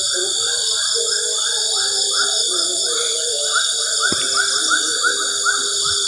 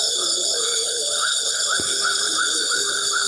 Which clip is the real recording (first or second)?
first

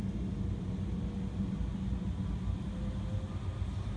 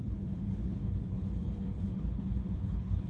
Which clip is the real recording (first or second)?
first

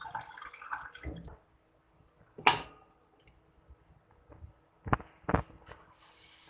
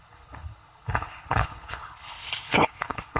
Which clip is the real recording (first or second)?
first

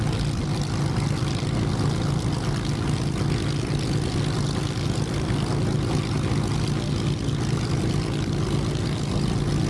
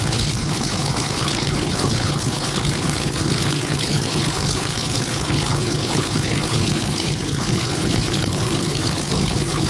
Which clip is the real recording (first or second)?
first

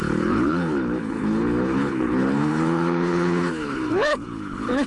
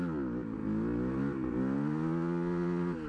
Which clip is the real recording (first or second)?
second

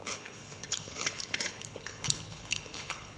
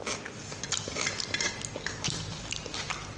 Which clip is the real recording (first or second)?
second